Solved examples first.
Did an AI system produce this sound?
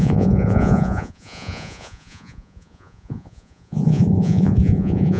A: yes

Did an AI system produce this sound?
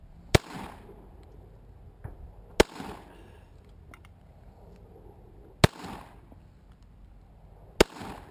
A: no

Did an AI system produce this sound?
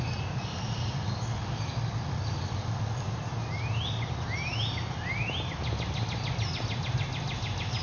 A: no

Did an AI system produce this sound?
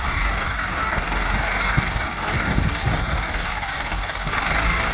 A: yes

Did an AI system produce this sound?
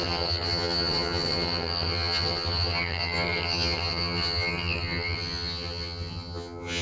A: yes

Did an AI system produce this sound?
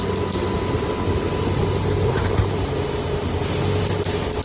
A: no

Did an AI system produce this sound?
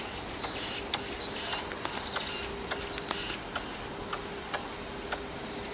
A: no